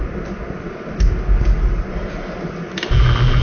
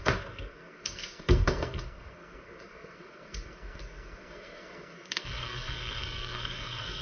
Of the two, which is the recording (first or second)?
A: first